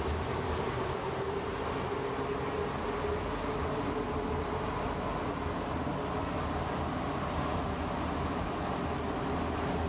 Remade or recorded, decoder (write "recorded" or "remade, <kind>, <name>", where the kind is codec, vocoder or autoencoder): recorded